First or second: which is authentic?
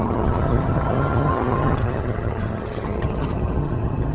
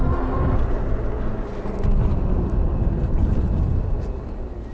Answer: second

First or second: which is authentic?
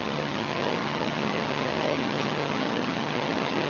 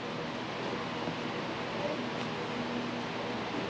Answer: second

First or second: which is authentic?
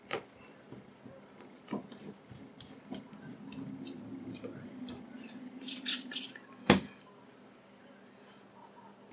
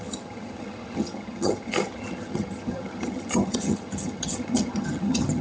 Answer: first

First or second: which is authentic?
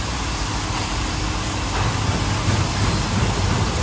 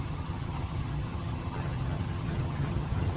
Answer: first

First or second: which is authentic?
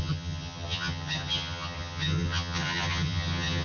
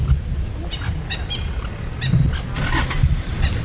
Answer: second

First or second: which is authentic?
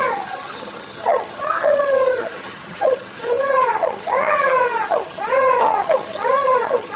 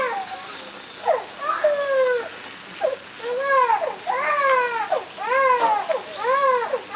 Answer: second